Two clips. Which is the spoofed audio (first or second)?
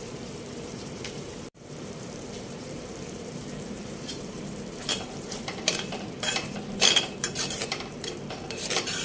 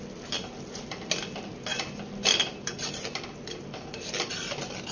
first